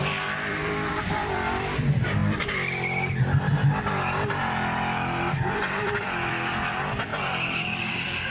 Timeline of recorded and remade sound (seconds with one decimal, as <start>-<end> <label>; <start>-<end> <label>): 0.0-2.2 remade; 2.2-5.2 recorded; 5.2-7.1 remade; 7.1-7.6 recorded; 7.6-8.3 remade